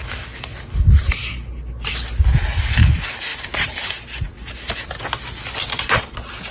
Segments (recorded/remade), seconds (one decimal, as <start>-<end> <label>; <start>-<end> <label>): 0.0-6.5 recorded